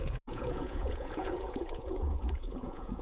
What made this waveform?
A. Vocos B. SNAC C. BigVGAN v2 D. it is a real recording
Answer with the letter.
A